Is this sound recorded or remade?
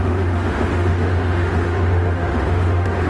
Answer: remade